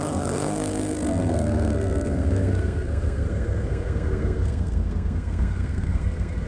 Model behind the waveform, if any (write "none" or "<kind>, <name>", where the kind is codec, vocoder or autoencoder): codec, SNAC